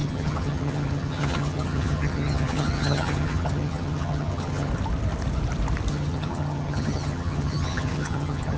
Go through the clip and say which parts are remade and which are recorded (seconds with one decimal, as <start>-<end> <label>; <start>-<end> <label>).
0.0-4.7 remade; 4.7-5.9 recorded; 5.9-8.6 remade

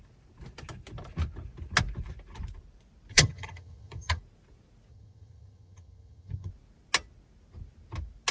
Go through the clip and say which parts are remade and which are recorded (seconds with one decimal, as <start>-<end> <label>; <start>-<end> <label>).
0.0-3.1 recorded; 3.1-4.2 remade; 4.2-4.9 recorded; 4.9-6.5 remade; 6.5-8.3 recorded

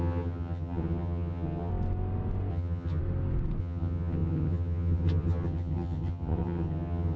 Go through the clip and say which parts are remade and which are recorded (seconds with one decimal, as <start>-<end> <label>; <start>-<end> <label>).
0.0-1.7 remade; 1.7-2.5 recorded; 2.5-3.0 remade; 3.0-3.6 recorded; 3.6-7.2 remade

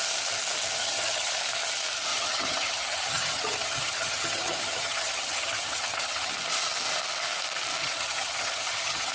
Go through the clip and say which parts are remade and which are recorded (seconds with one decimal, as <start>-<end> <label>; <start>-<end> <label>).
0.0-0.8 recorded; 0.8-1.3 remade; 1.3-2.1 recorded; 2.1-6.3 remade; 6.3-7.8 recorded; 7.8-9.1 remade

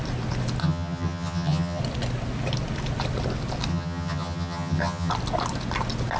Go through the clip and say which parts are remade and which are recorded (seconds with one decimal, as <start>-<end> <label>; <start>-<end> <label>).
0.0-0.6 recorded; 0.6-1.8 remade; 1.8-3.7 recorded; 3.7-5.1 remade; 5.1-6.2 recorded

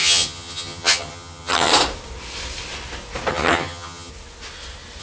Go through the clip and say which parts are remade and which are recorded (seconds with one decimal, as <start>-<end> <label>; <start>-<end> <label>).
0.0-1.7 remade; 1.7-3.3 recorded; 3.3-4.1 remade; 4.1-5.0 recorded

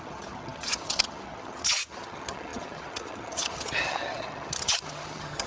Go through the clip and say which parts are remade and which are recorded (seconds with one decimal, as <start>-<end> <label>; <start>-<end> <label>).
0.0-5.5 remade

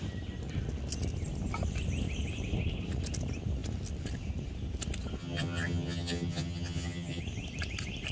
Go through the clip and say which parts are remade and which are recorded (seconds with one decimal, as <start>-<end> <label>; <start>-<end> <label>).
0.0-5.2 recorded; 5.2-7.2 remade; 7.2-8.1 recorded